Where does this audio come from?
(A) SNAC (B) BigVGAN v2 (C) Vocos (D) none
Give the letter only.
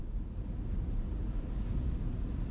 D